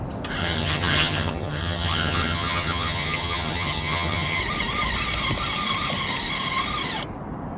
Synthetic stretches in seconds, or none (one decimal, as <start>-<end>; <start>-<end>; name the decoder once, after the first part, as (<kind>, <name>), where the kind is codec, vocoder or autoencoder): 0.4-4.4 (vocoder, HiFi-GAN)